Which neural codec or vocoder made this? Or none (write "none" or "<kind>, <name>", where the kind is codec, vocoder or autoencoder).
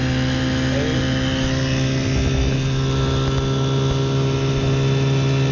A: none